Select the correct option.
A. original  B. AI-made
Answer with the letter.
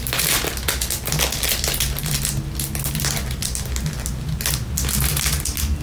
A